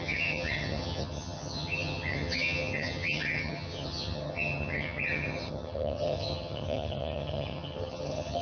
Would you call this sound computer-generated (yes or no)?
yes